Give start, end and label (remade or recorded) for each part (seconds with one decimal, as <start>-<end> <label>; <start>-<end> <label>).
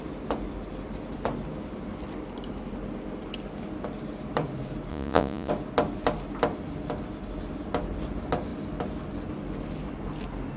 0.0-4.9 recorded; 4.9-5.5 remade; 5.5-10.6 recorded